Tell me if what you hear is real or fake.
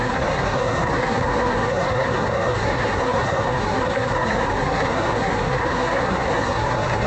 fake